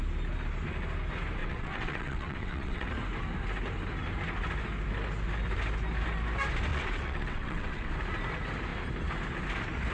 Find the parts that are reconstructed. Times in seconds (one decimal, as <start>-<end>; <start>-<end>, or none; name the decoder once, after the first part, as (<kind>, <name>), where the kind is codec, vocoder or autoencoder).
1.4-2.9 (vocoder, WaveNeXt); 6.7-7.9